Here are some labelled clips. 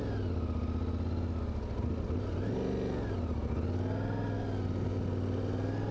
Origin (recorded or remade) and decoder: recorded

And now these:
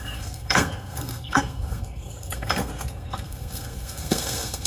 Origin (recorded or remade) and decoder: remade, codec, SNAC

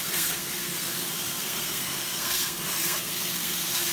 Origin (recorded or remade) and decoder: remade, codec, SNAC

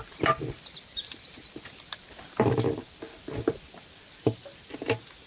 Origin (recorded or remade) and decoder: recorded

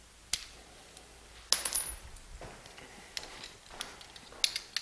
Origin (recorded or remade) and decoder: recorded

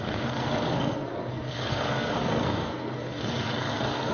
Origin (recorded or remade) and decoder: remade, codec, SNAC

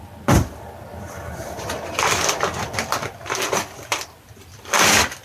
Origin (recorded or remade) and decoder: recorded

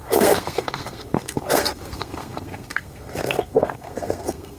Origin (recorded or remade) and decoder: remade, codec, SNAC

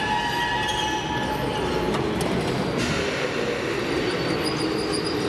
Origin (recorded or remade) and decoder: recorded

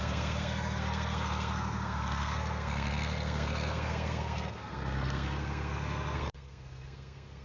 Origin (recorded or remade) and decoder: remade, codec, SNAC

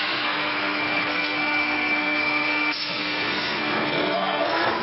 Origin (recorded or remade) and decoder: remade, codec, SNAC